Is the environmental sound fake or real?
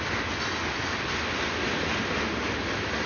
real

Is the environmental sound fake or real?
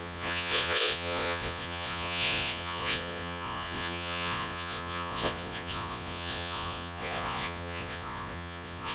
fake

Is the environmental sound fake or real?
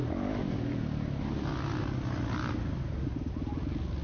real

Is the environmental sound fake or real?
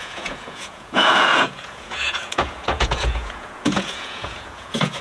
fake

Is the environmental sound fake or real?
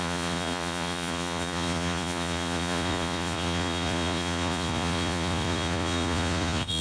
fake